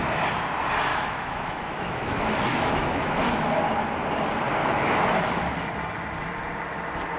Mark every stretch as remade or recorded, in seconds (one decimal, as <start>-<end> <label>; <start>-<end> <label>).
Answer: 0.0-0.9 recorded; 0.9-3.2 remade; 3.2-4.6 recorded; 4.6-5.4 remade; 5.4-7.2 recorded

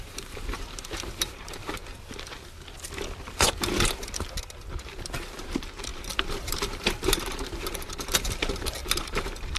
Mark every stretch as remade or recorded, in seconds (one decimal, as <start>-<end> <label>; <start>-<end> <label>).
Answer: 0.0-1.8 remade; 1.8-4.7 recorded; 4.7-9.6 remade

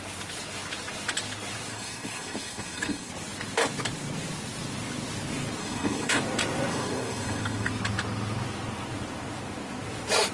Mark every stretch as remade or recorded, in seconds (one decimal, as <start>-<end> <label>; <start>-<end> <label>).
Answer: 0.0-1.7 recorded; 1.7-3.1 remade; 3.1-5.6 recorded; 5.6-6.2 remade; 6.2-6.7 recorded; 6.7-7.7 remade; 7.7-10.3 recorded